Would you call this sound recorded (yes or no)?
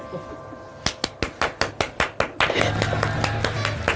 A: yes